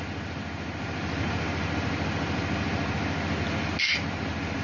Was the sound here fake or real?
real